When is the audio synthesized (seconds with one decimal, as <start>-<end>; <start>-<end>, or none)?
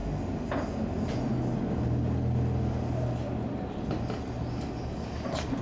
none